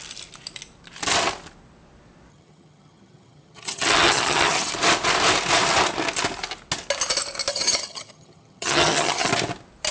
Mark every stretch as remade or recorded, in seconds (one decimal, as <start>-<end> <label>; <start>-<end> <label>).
0.0-2.3 recorded; 2.3-4.7 remade; 4.7-7.5 recorded; 7.5-9.3 remade; 9.3-9.9 recorded